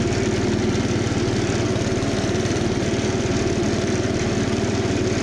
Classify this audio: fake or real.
real